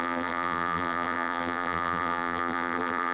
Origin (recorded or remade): remade